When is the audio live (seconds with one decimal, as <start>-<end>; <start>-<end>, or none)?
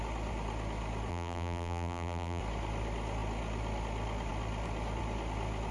0.0-1.1; 2.4-5.7